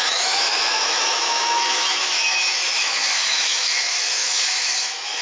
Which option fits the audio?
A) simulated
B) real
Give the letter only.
A